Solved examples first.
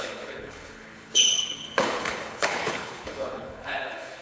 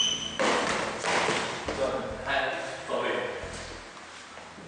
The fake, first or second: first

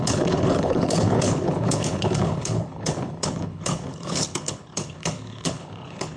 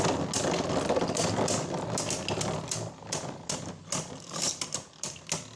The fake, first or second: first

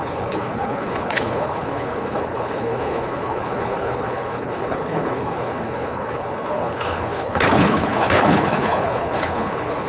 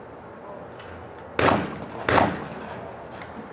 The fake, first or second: first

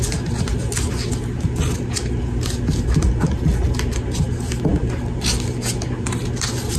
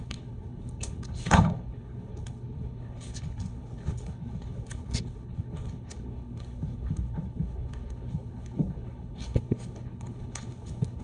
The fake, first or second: second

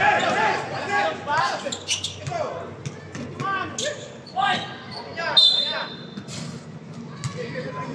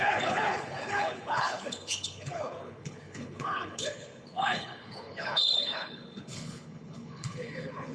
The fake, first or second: second